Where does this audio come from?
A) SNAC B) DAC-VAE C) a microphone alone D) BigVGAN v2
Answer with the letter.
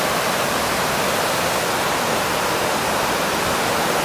C